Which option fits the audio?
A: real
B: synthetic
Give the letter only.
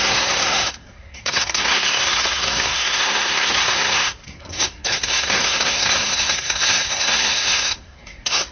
B